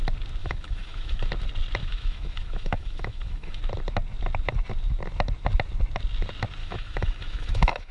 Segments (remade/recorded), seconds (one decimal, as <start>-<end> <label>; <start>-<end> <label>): 0.0-0.4 recorded; 0.4-1.3 remade; 1.3-1.8 recorded; 1.8-3.6 remade; 3.6-6.6 recorded; 6.6-7.9 remade

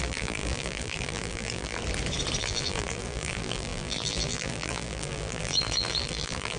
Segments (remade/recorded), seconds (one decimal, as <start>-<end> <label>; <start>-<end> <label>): 0.0-1.8 remade; 1.8-2.4 recorded; 2.4-6.6 remade

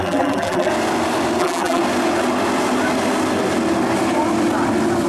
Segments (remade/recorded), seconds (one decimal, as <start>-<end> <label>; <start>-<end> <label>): 0.0-0.7 remade; 0.7-1.4 recorded; 1.4-1.8 remade; 1.8-5.1 recorded

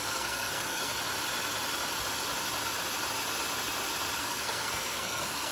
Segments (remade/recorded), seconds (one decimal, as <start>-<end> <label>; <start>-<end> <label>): 0.0-0.9 remade; 0.9-4.2 recorded; 4.2-5.5 remade

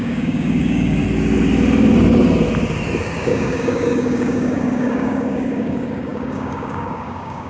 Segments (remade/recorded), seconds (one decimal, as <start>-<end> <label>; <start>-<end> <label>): 0.0-1.0 remade; 1.0-3.0 recorded; 3.0-7.5 remade

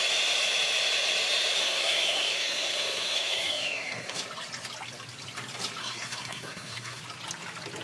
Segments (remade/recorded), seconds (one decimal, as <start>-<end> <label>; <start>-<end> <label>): 0.0-1.6 recorded; 1.6-4.2 remade; 4.2-5.8 recorded; 5.8-7.0 remade; 7.0-7.8 recorded

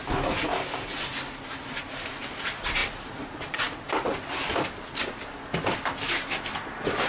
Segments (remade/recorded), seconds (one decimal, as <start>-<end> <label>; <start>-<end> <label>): 0.0-7.1 recorded

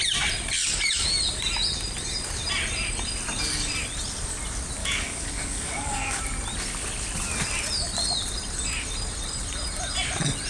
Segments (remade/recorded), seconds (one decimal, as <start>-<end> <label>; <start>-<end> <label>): 0.0-4.8 recorded; 4.8-6.2 remade; 6.2-10.5 recorded